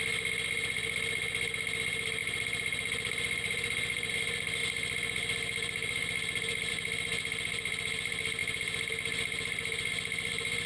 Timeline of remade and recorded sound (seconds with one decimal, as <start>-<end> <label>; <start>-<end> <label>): 0.0-2.2 recorded; 2.2-4.1 remade; 4.1-8.4 recorded; 8.4-8.9 remade; 8.9-10.7 recorded